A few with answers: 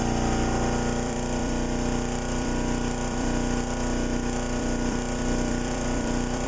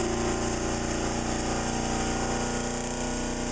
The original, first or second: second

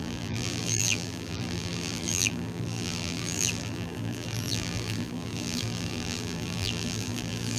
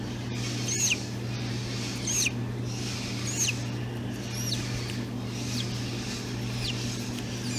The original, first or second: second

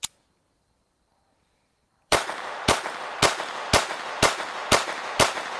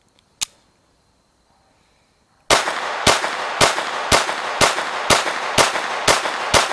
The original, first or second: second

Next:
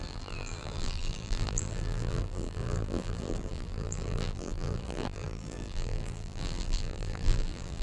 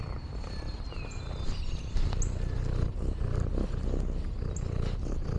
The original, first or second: second